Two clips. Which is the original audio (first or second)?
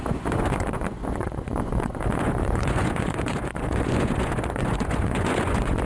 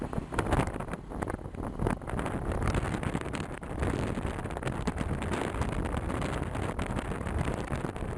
second